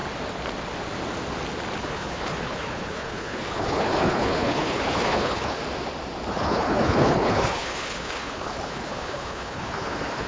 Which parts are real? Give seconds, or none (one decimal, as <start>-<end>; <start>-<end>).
0.0-1.8; 5.6-6.3